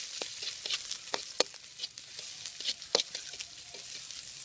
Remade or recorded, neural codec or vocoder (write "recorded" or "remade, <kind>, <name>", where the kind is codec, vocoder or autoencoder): recorded